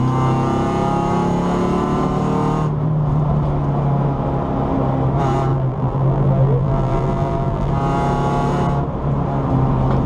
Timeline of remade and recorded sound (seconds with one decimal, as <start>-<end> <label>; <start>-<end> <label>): 0.0-5.5 recorded; 5.5-7.7 remade; 7.7-10.1 recorded